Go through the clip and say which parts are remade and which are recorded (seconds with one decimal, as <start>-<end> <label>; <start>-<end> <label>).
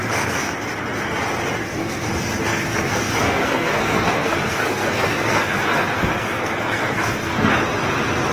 0.0-0.5 remade; 0.5-1.6 recorded; 1.6-2.1 remade; 2.1-2.5 recorded; 2.5-7.5 remade; 7.5-8.3 recorded